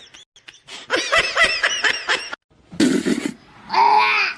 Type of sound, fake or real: real